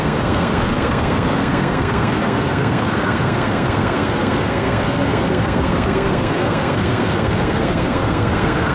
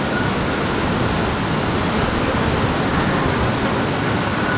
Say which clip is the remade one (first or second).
first